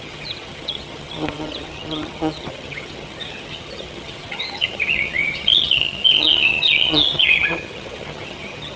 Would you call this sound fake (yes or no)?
yes